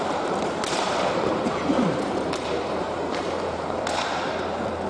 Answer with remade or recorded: remade